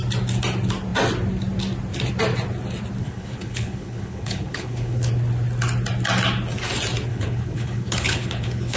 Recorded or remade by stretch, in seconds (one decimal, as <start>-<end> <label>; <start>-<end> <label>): 0.0-3.0 recorded; 3.0-5.1 remade; 5.1-7.1 recorded; 7.1-8.8 remade

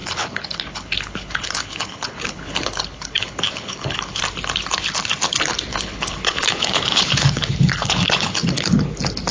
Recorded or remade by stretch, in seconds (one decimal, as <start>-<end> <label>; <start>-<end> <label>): 0.0-4.2 remade; 4.2-5.7 recorded; 5.7-8.8 remade; 8.8-9.3 recorded

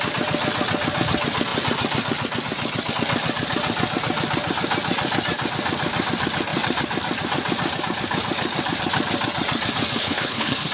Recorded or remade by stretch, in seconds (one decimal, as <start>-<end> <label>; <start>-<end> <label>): 0.0-10.0 recorded; 10.0-10.7 remade

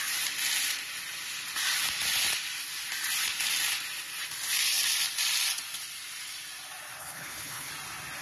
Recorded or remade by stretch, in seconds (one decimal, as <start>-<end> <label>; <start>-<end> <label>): 0.0-7.0 recorded; 7.0-7.7 remade; 7.7-8.2 recorded

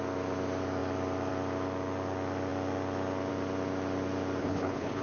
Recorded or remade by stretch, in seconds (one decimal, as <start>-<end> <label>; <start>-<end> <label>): 0.0-4.4 recorded; 4.4-5.0 remade

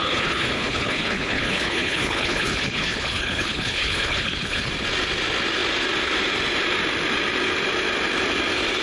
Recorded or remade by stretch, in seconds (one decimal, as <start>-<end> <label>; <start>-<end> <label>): 0.0-4.7 remade; 4.7-8.8 recorded